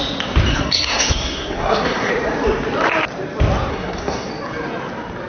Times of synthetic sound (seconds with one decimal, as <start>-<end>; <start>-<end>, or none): 0.5-2.1; 3.7-4.3

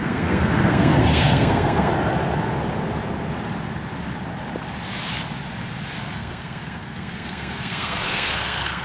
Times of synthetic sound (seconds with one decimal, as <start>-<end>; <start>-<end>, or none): 0.0-1.9; 6.0-8.8

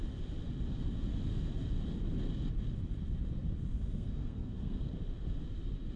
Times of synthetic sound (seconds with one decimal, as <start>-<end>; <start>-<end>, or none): 3.7-4.9

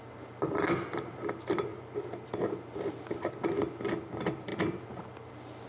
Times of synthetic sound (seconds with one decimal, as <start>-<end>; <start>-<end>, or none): none

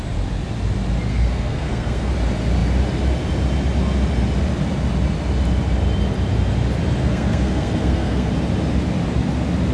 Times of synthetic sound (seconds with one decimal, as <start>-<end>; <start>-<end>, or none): 1.1-2.1; 7.0-8.3

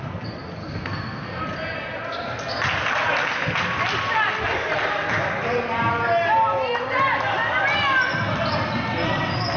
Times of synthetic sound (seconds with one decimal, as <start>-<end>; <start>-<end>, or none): 0.6-1.4